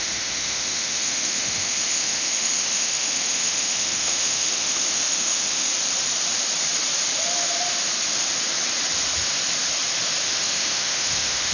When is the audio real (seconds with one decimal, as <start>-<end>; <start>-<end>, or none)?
5.7-10.2

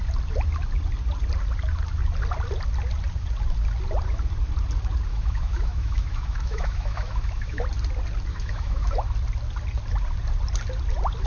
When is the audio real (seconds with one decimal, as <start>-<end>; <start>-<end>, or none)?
0.0-5.1; 7.6-8.3; 8.9-11.3

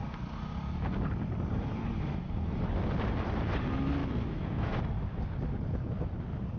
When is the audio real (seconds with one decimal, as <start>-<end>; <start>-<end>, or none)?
0.0-4.0; 4.8-6.6

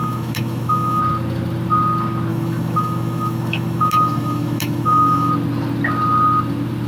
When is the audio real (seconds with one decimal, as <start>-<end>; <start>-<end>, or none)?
1.0-2.3; 5.3-6.9

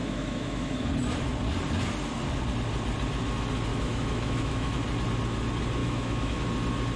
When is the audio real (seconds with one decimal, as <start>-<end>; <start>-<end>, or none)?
0.9-3.7; 4.7-5.8; 6.4-7.0

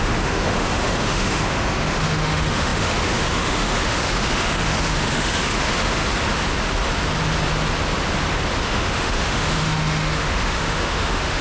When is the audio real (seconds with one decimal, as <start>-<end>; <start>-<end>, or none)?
6.0-8.6

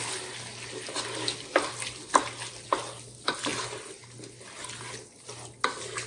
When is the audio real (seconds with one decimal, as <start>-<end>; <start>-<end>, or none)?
0.0-6.1

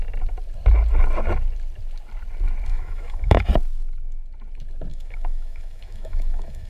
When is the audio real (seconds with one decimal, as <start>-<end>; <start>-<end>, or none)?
0.0-2.7; 3.5-4.9